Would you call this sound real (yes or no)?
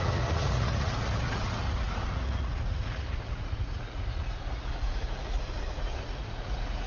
no